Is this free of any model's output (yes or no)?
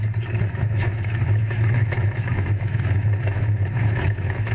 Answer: no